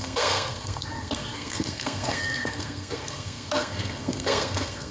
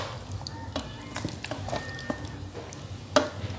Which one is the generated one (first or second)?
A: first